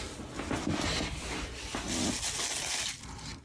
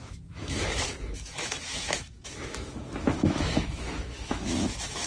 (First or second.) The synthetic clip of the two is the second